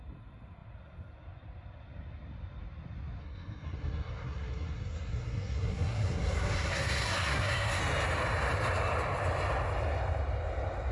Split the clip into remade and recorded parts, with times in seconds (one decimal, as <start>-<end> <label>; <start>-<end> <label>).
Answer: 0.0-3.2 recorded; 3.2-7.8 remade; 7.8-10.9 recorded